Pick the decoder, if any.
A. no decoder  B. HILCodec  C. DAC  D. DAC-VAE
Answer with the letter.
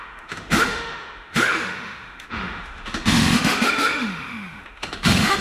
D